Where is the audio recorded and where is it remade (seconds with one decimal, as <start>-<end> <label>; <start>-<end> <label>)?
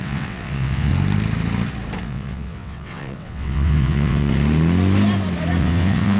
0.0-0.9 remade; 0.9-2.0 recorded; 2.0-4.3 remade; 4.3-5.6 recorded; 5.6-6.2 remade